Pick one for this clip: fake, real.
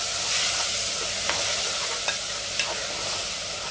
real